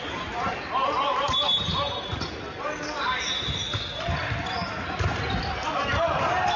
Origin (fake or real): real